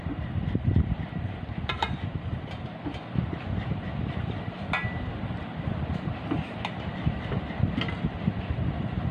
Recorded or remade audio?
recorded